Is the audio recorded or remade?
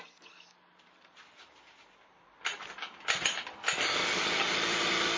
recorded